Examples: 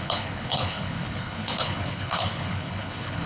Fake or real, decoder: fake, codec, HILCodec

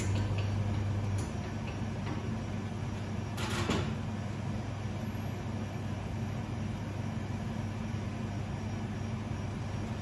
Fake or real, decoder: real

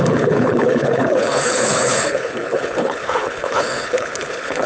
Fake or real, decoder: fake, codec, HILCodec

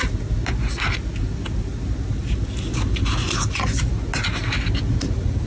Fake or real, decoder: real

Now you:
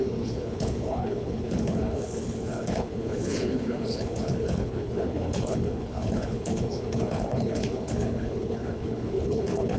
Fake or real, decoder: fake, codec, HILCodec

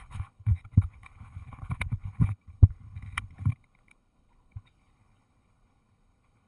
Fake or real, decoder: fake, codec, HILCodec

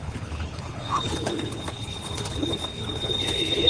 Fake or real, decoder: fake, codec, HILCodec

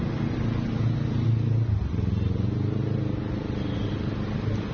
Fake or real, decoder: real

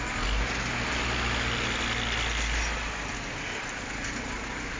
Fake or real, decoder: real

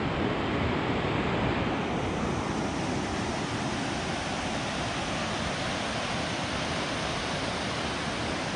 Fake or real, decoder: real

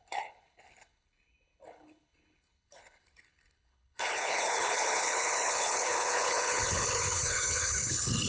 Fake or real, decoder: fake, codec, HILCodec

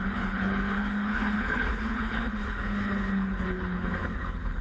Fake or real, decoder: fake, codec, HILCodec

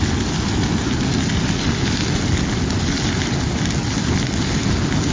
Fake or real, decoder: real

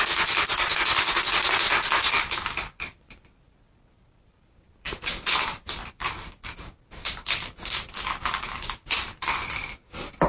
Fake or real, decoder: real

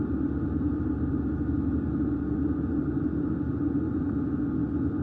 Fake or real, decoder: real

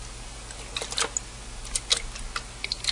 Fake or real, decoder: real